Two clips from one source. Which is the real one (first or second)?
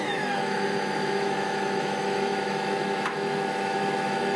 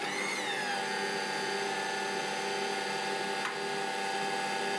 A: second